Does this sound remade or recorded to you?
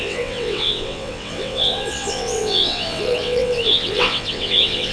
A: remade